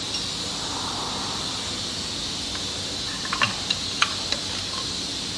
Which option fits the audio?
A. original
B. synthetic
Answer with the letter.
A